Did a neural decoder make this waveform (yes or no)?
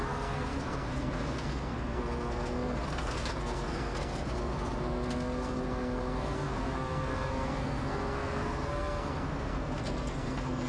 yes